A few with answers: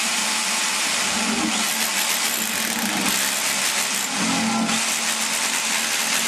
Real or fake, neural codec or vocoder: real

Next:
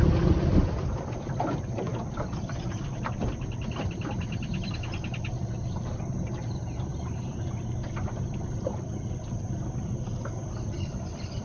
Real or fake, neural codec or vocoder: fake, vocoder, BigVGAN v2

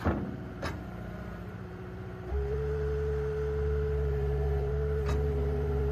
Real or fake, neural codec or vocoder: fake, vocoder, BigVGAN v2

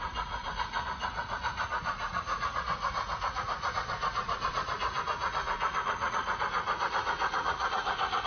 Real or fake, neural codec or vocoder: fake, vocoder, Vocos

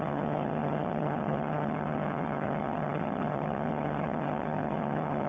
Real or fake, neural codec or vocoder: fake, vocoder, HiFi-GAN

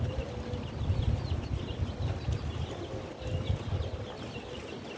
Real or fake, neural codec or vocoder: real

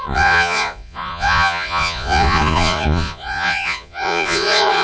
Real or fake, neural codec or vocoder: fake, vocoder, Vocos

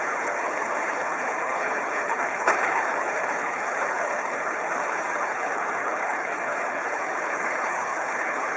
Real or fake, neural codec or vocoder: fake, codec, HILCodec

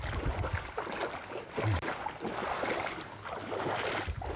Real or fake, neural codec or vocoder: real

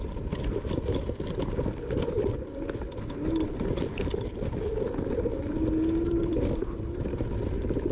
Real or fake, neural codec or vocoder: real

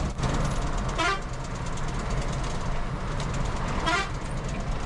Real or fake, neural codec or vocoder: real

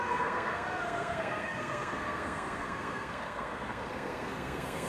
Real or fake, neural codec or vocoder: fake, codec, SNAC